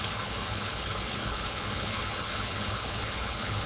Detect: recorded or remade remade